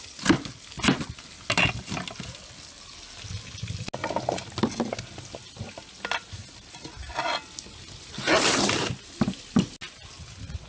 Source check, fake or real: real